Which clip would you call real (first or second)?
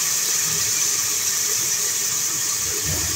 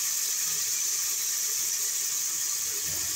second